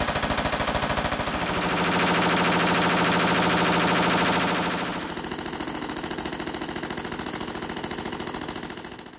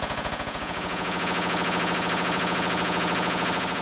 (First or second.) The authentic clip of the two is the first